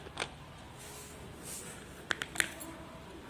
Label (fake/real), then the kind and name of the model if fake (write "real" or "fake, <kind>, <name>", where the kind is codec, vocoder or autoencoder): real